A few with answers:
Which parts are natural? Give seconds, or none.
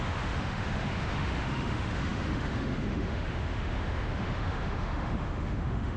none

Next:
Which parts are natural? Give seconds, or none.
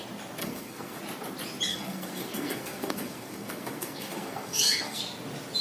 0.0-0.4; 1.0-1.7; 5.0-5.6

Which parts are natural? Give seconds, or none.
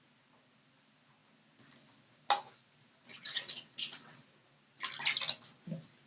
0.0-3.0; 4.2-6.1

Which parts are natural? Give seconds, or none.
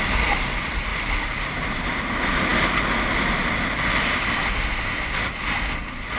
0.0-0.9; 1.6-6.2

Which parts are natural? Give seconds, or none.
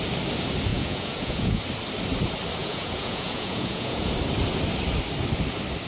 0.0-0.7; 1.6-2.6; 4.1-5.9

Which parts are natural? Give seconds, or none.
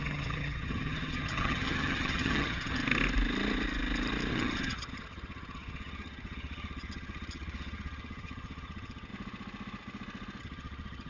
2.8-4.3; 9.1-10.4